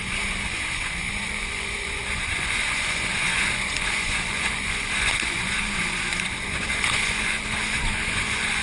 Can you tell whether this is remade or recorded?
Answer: remade